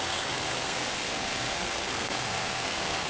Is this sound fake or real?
fake